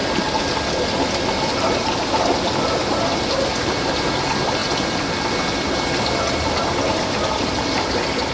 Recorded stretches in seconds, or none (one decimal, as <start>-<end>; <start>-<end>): 0.0-8.3